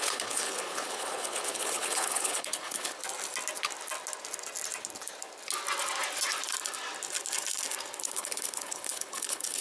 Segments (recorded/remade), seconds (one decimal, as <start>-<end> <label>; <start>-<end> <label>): 0.0-3.0 remade; 3.0-8.0 recorded; 8.0-9.6 remade